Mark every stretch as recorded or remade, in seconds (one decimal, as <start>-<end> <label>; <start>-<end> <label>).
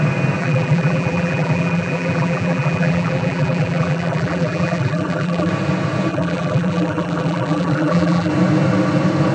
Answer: 0.0-0.4 recorded; 0.4-5.5 remade; 5.5-6.1 recorded; 6.1-8.3 remade; 8.3-9.3 recorded